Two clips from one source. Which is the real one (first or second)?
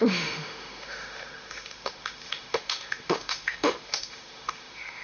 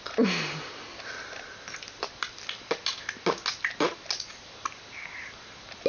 second